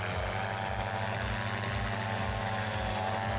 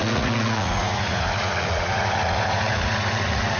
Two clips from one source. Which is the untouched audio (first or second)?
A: first